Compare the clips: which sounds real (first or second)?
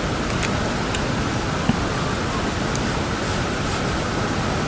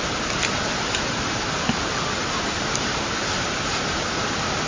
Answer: first